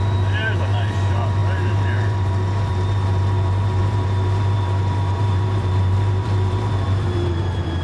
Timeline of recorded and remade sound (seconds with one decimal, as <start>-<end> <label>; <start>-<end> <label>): 0.0-7.8 remade

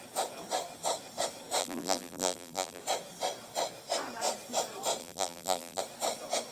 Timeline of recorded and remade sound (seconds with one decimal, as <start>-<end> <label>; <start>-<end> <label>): 0.0-1.6 recorded; 1.6-2.8 remade; 2.8-5.0 recorded; 5.0-5.8 remade; 5.8-6.5 recorded

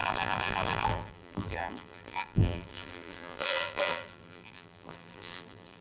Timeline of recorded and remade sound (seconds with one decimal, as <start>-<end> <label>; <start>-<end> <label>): 0.0-5.8 remade

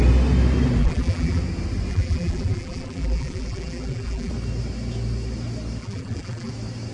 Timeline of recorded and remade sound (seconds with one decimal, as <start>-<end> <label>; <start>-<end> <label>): 0.0-0.8 recorded; 0.8-1.4 remade; 1.4-1.9 recorded; 1.9-4.3 remade; 4.3-5.8 recorded; 5.8-6.5 remade; 6.5-6.9 recorded

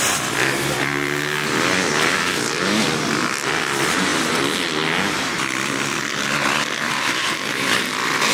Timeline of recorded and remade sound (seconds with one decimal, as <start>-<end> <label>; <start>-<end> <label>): 0.0-8.3 recorded